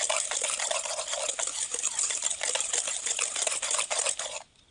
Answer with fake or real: real